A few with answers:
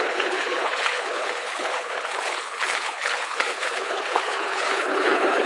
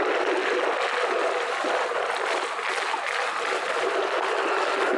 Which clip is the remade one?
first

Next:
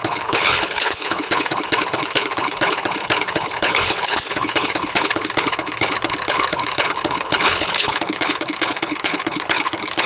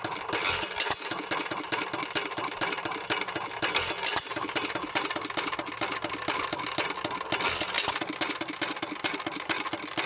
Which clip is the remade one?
first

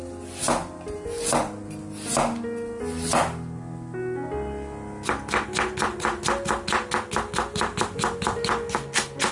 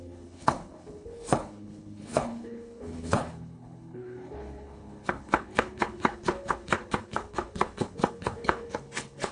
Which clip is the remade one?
second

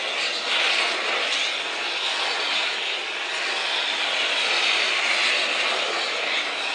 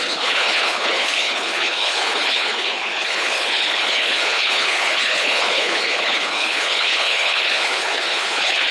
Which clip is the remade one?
second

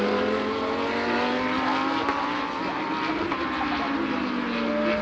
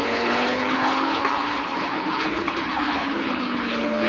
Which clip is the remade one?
second